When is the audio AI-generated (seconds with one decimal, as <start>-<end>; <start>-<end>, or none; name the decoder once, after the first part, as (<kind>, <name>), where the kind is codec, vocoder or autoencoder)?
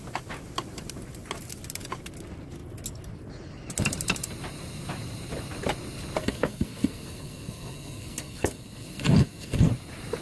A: 6.2-9.7 (codec, SNAC)